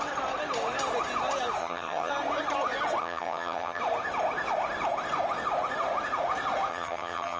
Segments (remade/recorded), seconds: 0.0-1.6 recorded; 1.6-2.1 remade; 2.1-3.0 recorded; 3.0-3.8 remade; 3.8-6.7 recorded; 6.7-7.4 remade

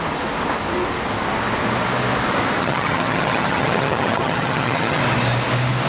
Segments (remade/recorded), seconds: 0.0-2.6 recorded; 2.6-5.0 remade; 5.0-5.9 recorded

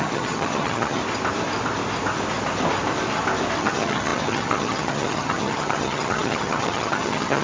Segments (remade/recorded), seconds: 0.0-1.0 remade; 1.0-3.6 recorded; 3.6-7.4 remade

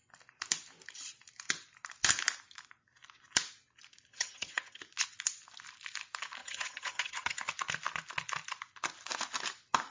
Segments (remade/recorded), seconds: 0.0-4.1 recorded; 4.1-4.8 remade; 4.8-6.4 recorded; 6.4-7.5 remade; 7.5-9.9 recorded

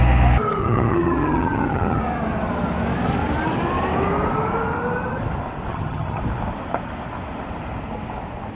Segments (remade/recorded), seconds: 0.0-0.6 recorded; 0.6-2.0 remade; 2.0-5.7 recorded; 5.7-6.2 remade; 6.2-8.5 recorded

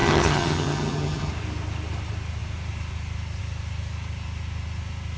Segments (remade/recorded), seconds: 0.0-1.3 remade; 1.3-5.2 recorded